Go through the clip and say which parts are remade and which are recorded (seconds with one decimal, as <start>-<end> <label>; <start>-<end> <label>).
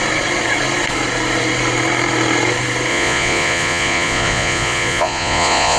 0.0-2.9 recorded; 2.9-5.8 remade